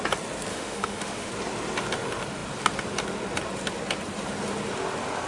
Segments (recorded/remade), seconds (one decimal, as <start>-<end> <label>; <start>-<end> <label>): 0.0-0.5 recorded; 0.5-1.3 remade; 1.3-5.3 recorded